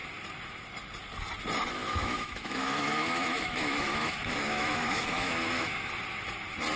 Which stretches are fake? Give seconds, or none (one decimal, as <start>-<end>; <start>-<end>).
1.8-5.9